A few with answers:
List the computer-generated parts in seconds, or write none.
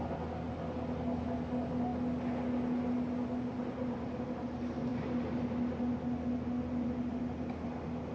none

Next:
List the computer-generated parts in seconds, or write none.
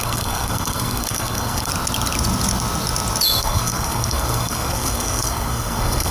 0.0-1.7 (codec, SNAC); 3.4-6.1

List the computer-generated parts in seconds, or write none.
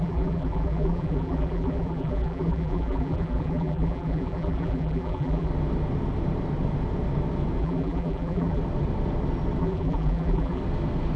0.0-5.5 (vocoder, BigVGAN v2); 7.6-8.6; 9.6-10.6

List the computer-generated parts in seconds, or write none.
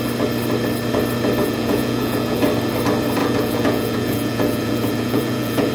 1.4-2.4 (vocoder, Vocos); 3.2-5.7